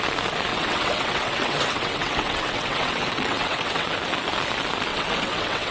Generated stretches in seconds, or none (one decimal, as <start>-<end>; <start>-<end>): 0.5-3.9; 4.9-5.7